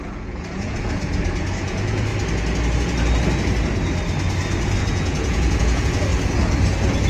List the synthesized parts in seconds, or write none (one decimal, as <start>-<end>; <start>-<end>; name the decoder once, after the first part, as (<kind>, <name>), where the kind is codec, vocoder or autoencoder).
0.0-2.1 (vocoder, Vocos); 4.8-6.1